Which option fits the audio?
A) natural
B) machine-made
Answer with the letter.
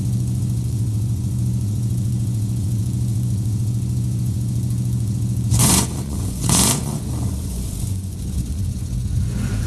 B